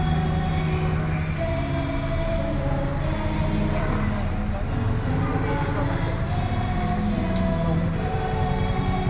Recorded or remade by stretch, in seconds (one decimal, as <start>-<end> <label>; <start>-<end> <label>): 0.0-9.1 recorded